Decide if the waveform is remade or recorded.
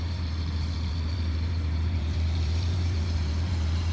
remade